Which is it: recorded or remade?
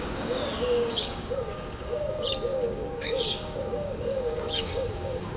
remade